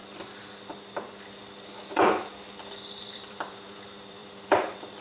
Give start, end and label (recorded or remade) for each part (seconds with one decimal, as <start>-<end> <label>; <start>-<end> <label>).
0.0-3.0 recorded; 3.0-5.0 remade